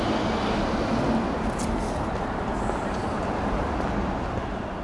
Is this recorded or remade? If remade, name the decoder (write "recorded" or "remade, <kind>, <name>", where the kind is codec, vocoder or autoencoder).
recorded